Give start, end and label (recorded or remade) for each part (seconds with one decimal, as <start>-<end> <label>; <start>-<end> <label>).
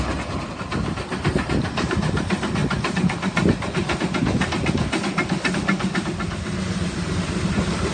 0.0-7.9 recorded